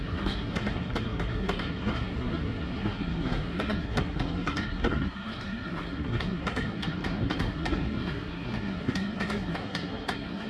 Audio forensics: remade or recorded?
remade